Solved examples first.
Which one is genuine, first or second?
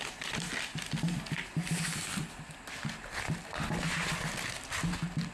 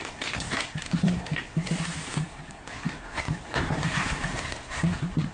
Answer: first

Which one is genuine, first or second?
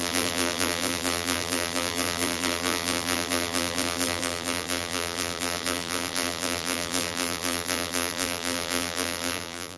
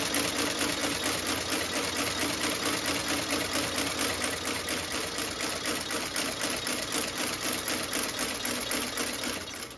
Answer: second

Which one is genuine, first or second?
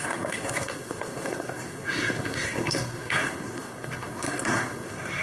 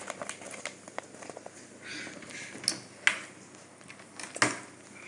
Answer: second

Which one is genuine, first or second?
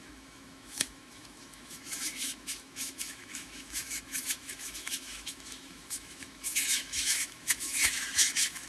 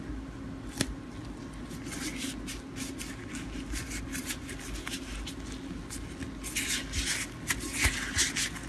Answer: second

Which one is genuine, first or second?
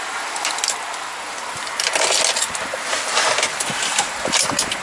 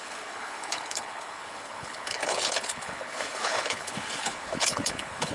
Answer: first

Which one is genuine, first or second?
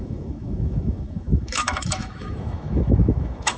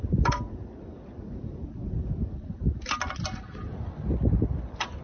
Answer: second